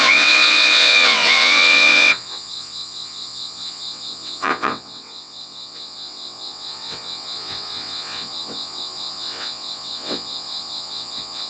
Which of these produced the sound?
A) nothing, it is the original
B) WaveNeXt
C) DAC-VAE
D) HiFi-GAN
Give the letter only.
B